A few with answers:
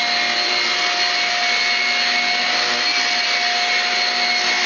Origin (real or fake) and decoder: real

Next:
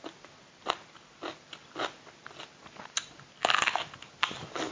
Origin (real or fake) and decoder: real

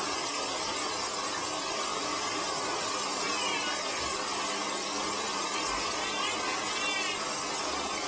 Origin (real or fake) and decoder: real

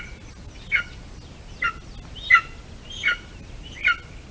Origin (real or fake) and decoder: real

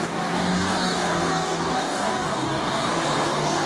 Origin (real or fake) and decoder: fake, codec, DAC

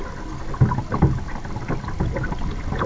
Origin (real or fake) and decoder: real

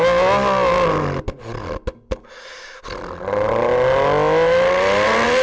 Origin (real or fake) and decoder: real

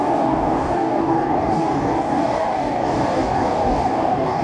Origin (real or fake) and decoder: fake, codec, DAC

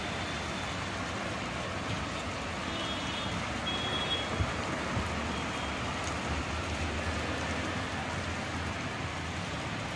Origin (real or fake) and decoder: real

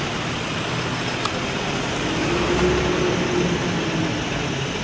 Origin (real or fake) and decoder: real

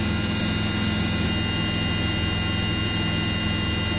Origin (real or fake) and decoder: real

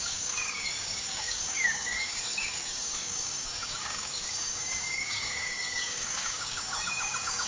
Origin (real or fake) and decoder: fake, codec, DAC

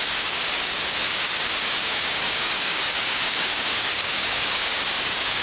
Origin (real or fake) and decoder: fake, codec, DAC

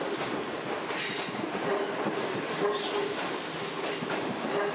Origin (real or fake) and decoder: real